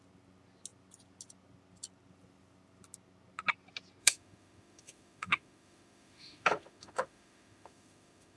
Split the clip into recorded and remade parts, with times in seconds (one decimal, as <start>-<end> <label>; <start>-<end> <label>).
0.0-4.0 recorded; 4.0-8.4 remade

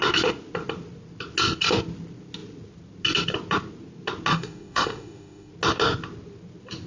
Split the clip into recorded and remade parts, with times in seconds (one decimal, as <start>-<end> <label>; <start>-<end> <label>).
0.0-4.3 recorded; 4.3-5.5 remade; 5.5-6.9 recorded

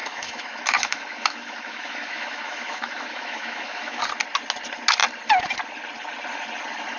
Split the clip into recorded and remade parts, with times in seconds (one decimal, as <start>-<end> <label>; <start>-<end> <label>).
0.0-4.0 remade; 4.0-7.0 recorded

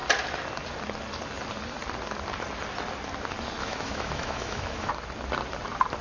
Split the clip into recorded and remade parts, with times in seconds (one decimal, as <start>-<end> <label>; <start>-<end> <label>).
0.0-3.6 recorded; 3.6-4.9 remade; 4.9-6.0 recorded

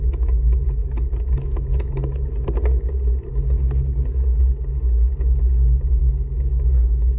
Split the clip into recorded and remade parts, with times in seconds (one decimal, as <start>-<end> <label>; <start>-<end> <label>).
0.0-6.0 recorded; 6.0-7.2 remade

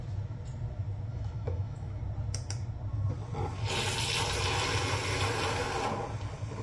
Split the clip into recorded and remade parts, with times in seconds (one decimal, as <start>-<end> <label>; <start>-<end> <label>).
0.0-1.1 recorded; 1.1-2.0 remade; 2.0-6.6 recorded

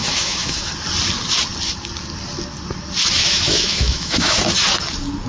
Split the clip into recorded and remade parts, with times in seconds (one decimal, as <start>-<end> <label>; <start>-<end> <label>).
0.0-0.7 remade; 0.7-3.2 recorded; 3.2-4.4 remade; 4.4-5.3 recorded

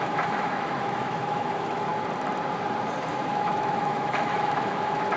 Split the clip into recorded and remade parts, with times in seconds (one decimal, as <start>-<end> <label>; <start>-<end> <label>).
0.0-1.9 remade; 1.9-3.1 recorded; 3.1-5.2 remade